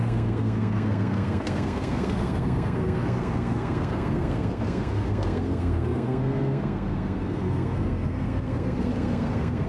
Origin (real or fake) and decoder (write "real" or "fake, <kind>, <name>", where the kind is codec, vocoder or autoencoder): fake, codec, SNAC